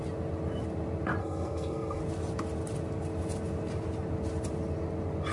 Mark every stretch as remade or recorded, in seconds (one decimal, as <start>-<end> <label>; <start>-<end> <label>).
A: 0.0-1.2 recorded; 1.2-2.0 remade; 2.0-5.3 recorded